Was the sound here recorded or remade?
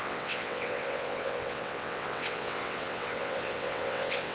remade